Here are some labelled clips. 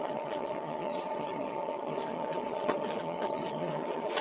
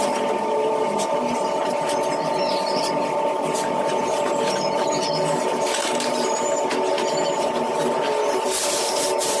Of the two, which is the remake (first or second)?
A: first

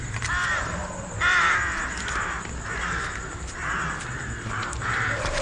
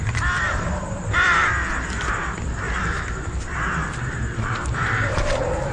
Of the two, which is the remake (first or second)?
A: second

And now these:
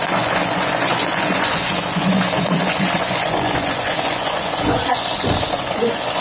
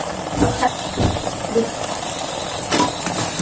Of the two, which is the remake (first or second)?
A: first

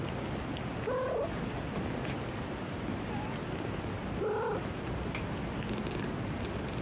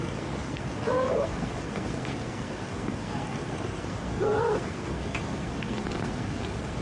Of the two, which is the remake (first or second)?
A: second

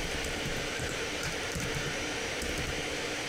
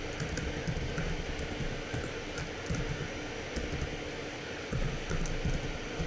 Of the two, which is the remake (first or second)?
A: first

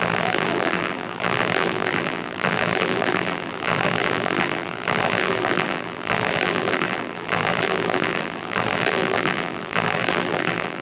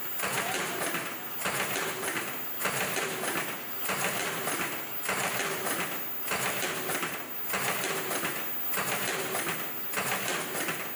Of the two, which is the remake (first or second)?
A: first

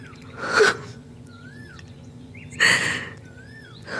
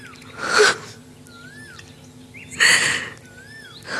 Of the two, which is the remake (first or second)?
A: first